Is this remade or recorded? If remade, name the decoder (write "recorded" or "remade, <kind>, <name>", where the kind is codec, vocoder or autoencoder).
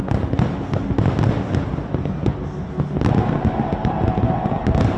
recorded